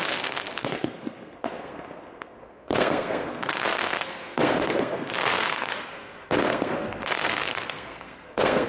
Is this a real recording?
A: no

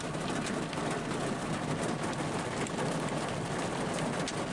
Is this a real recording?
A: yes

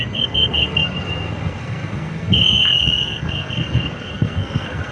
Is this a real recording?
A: no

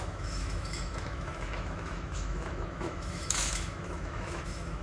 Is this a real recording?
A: no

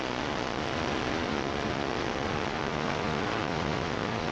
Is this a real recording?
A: no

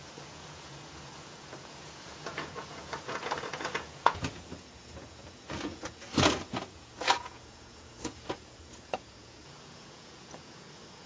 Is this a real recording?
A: no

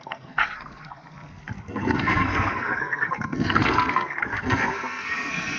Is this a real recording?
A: no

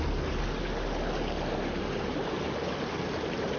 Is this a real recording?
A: yes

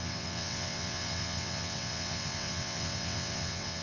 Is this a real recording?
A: no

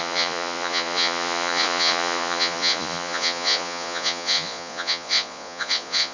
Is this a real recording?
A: no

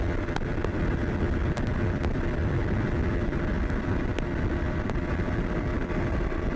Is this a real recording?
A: yes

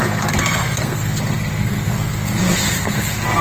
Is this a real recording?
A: no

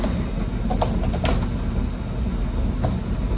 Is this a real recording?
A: yes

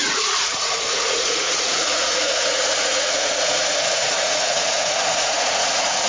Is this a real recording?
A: no